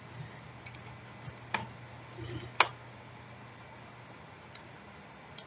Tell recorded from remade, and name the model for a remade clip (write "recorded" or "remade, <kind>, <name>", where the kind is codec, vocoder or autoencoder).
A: recorded